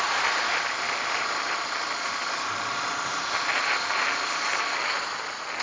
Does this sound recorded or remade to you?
recorded